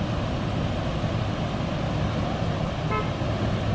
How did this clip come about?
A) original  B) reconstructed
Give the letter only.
A